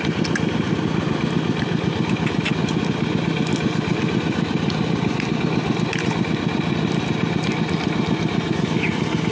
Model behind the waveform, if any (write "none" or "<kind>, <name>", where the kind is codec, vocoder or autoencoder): none